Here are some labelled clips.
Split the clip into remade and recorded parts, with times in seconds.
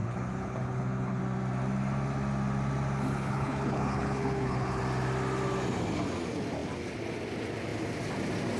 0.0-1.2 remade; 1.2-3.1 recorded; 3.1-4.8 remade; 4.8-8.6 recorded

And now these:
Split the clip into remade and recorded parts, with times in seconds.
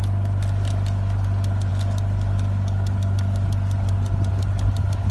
0.0-5.1 recorded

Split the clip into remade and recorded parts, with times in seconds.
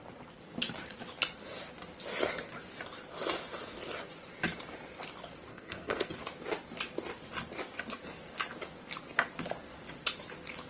0.0-5.5 recorded; 5.5-6.1 remade; 6.1-10.7 recorded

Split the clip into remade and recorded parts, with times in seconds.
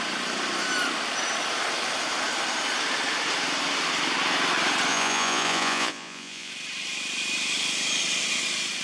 0.0-4.9 recorded; 4.9-6.5 remade; 6.5-8.8 recorded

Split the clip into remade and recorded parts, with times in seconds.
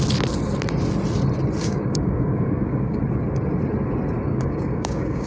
0.0-1.6 recorded; 1.6-3.0 remade; 3.0-4.3 recorded; 4.3-5.3 remade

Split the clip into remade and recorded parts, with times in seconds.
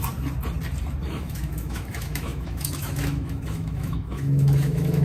0.0-1.1 recorded; 1.1-5.0 remade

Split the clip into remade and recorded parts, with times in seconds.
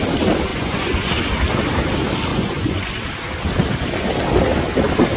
0.0-0.5 recorded; 0.5-1.1 remade; 1.1-2.3 recorded; 2.3-2.9 remade; 2.9-5.2 recorded